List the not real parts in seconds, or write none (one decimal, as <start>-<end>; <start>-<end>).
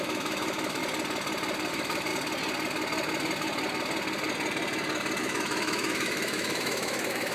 0.0-0.8; 1.7-2.1; 5.2-7.3